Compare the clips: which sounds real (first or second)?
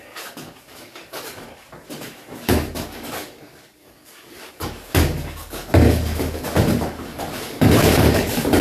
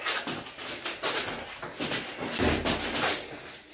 second